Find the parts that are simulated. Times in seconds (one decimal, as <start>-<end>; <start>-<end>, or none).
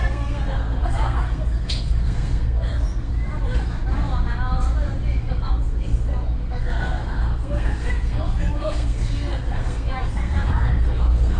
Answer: 0.0-3.1; 5.2-11.4